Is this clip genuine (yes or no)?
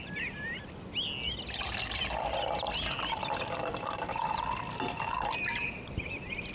yes